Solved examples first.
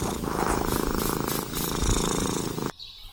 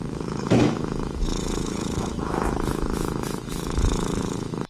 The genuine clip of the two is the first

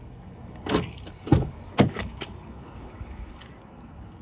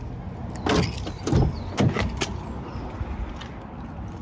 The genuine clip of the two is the second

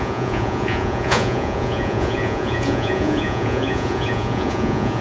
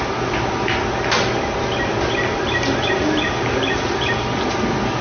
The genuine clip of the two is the second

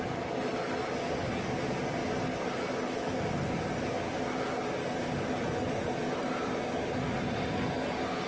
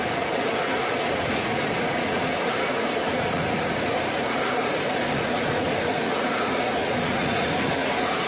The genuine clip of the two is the first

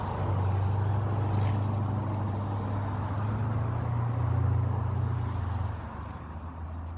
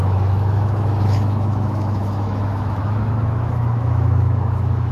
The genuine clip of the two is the first